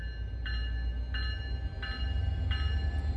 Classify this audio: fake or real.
real